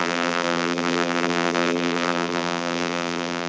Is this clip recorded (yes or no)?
no